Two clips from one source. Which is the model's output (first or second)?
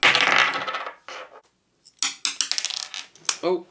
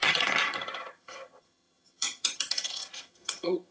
second